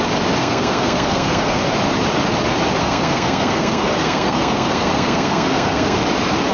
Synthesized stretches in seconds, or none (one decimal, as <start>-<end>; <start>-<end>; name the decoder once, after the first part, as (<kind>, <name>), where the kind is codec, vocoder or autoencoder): 0.4-1.6 (codec, SNAC); 2.8-6.0